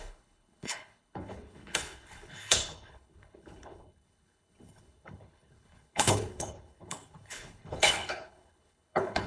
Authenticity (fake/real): fake